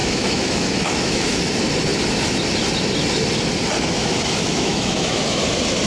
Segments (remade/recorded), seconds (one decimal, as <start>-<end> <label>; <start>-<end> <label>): 0.0-1.4 remade; 1.4-4.0 recorded; 4.0-5.4 remade; 5.4-5.9 recorded